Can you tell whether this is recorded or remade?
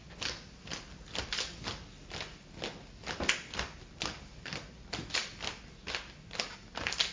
recorded